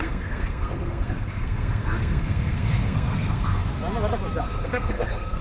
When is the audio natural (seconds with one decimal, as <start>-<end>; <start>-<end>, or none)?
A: 3.7-4.4

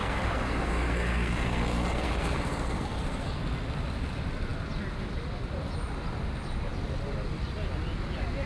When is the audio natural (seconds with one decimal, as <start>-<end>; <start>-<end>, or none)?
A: 3.4-8.5